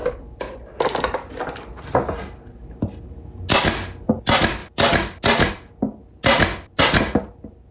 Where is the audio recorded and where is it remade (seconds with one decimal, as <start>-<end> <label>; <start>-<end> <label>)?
0.0-7.7 recorded